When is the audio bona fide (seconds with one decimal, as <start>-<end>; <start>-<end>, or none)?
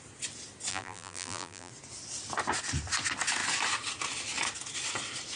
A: 0.0-0.7; 1.7-5.4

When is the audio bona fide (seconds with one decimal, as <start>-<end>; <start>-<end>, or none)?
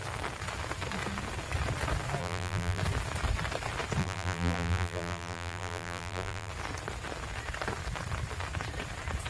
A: 0.0-2.2; 2.8-4.0; 6.5-9.3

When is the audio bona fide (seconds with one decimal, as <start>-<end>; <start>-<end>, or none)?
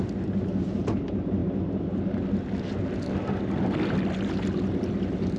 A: 0.0-5.4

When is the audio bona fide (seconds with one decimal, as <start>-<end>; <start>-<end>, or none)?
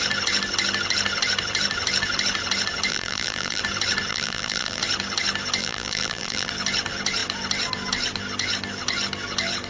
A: 0.0-2.9; 3.6-4.1; 4.8-5.6; 6.5-9.7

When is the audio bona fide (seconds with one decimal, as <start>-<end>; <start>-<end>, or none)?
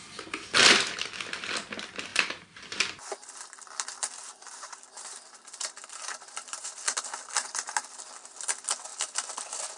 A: 0.0-2.1; 7.1-8.9; 9.4-9.8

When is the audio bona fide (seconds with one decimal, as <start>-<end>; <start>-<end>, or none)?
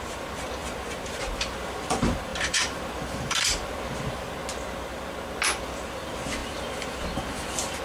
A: 4.4-5.6